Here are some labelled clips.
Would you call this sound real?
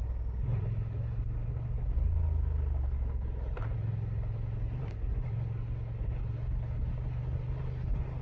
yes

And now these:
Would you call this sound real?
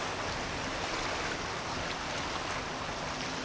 yes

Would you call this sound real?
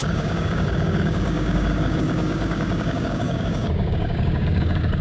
no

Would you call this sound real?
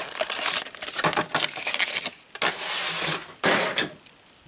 yes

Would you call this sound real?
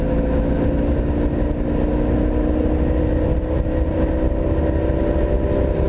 yes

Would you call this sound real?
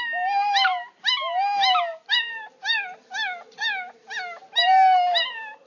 yes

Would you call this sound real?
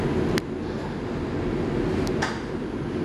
yes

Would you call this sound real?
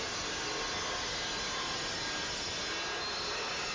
yes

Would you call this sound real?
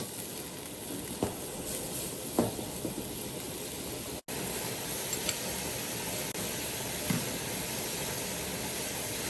yes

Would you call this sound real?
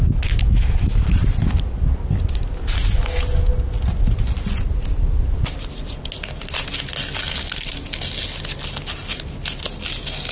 yes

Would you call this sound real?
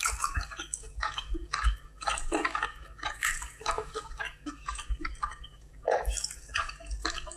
no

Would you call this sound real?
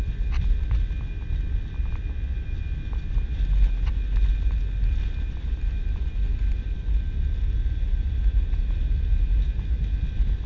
yes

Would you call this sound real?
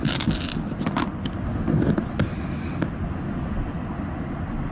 yes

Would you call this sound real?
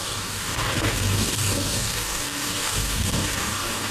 no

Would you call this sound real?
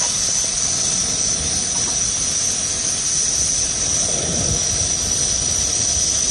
yes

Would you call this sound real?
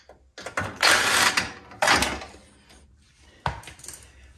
yes